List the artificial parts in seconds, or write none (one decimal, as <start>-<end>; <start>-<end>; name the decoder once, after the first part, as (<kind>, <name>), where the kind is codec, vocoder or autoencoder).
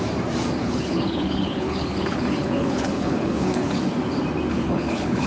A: 0.6-3.8 (codec, HILCodec); 4.5-5.3